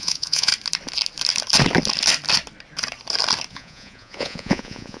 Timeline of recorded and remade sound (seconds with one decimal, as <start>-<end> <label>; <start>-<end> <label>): 0.0-0.5 remade; 0.5-3.5 recorded; 3.5-5.0 remade